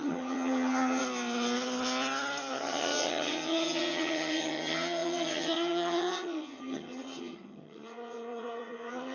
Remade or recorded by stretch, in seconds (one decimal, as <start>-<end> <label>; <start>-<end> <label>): 0.0-1.0 remade; 1.0-2.5 recorded; 2.5-9.1 remade